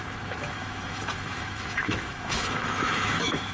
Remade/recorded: remade